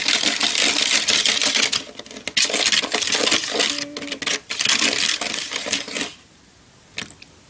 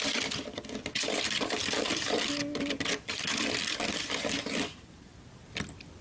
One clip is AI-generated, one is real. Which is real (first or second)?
first